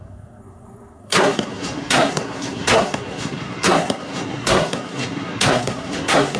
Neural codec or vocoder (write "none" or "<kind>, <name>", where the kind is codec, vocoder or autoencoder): codec, SNAC